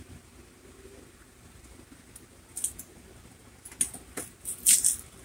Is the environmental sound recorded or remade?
recorded